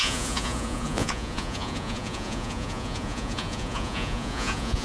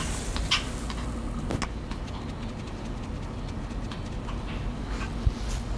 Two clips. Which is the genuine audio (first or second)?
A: second